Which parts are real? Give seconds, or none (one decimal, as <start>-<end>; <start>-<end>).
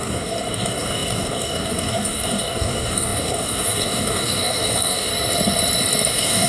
5.1-6.1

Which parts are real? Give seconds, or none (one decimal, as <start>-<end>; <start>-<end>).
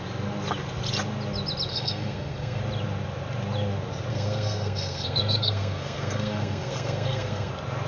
0.0-1.7; 2.6-4.1; 7.5-7.9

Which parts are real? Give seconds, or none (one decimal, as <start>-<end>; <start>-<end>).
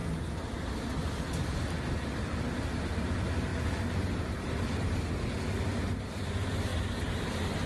0.0-7.7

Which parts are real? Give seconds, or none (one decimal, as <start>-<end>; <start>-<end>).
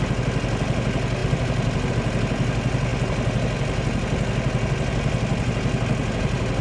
0.0-6.6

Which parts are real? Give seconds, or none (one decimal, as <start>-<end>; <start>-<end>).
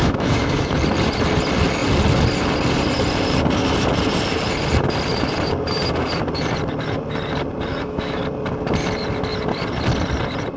0.7-7.7; 8.2-10.6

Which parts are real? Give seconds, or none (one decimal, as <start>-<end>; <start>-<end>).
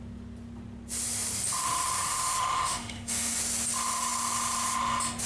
0.0-2.1; 3.4-5.3